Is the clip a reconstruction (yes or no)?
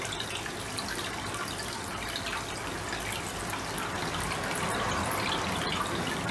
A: no